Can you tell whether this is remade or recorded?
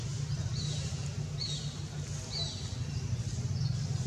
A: recorded